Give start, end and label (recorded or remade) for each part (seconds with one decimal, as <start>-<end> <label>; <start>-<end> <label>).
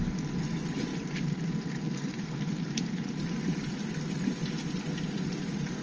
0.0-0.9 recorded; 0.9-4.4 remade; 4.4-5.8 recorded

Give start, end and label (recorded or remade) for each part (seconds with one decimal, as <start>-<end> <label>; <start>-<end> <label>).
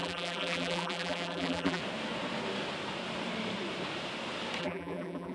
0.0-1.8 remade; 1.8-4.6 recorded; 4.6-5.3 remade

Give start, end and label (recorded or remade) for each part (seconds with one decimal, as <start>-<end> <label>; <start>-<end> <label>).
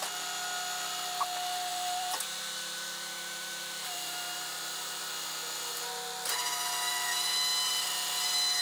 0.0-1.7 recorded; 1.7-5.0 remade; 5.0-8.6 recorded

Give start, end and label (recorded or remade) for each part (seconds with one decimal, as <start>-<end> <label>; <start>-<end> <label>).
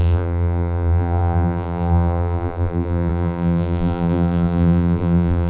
0.0-5.5 remade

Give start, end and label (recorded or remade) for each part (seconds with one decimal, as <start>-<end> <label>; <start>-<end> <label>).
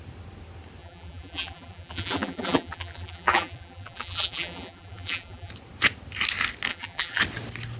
0.0-0.8 recorded; 0.8-5.5 remade; 5.5-6.7 recorded; 6.7-7.2 remade; 7.2-7.8 recorded